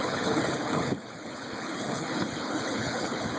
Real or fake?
fake